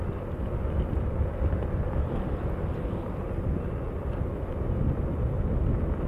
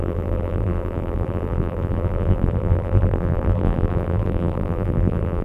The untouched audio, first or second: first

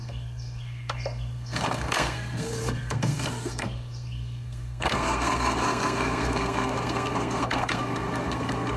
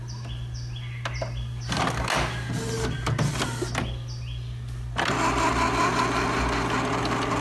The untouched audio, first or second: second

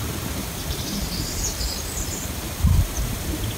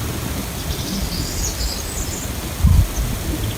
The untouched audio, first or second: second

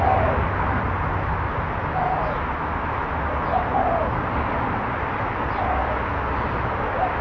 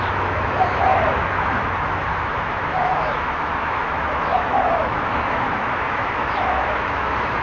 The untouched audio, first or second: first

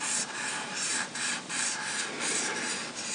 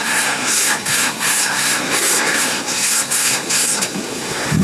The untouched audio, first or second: first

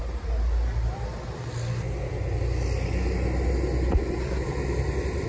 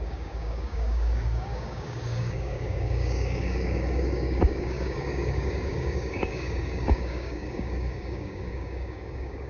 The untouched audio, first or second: first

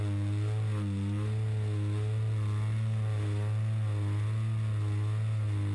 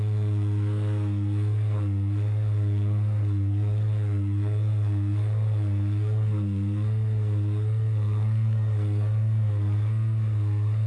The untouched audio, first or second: first